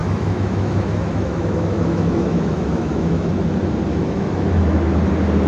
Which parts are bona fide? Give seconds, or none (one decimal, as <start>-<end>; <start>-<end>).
3.3-3.9; 4.8-5.5